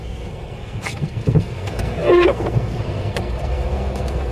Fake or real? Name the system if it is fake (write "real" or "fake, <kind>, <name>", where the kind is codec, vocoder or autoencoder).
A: fake, codec, SNAC